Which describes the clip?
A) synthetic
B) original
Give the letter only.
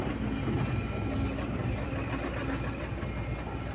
B